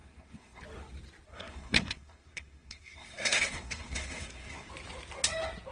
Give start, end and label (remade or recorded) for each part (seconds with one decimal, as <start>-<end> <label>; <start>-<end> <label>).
0.0-0.6 remade; 0.6-1.3 recorded; 1.3-4.7 remade; 4.7-5.7 recorded